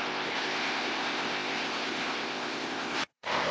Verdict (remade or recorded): remade